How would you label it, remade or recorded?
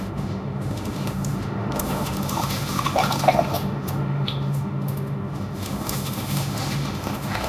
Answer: remade